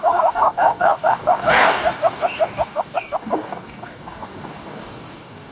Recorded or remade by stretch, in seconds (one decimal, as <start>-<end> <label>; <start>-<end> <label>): 0.0-5.5 remade